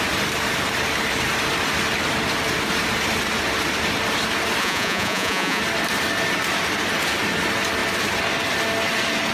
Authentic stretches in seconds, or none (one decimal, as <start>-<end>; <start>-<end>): 0.0-4.6; 5.6-9.3